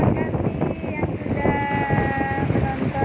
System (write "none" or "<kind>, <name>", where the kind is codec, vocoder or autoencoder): none